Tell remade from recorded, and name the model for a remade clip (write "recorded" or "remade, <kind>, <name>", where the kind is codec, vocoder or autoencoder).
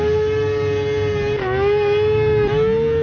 recorded